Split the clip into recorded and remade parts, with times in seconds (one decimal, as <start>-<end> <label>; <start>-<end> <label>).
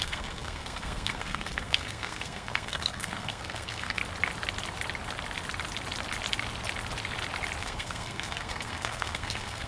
0.0-4.0 remade; 4.0-7.6 recorded; 7.6-9.7 remade